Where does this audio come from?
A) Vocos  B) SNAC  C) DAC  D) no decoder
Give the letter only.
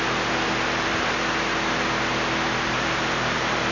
D